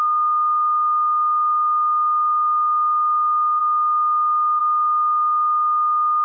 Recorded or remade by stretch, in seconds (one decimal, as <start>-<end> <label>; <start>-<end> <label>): 0.0-3.6 remade; 3.6-4.6 recorded; 4.6-6.2 remade